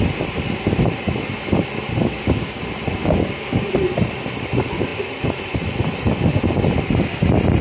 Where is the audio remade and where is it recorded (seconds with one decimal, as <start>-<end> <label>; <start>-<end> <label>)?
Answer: 0.0-2.0 recorded; 2.0-2.6 remade; 2.6-3.0 recorded; 3.0-3.7 remade; 3.7-7.6 recorded